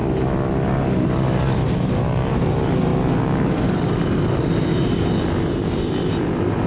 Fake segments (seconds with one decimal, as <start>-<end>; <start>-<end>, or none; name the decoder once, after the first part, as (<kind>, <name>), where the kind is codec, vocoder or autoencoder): 1.4-6.7 (vocoder, BigVGAN v2)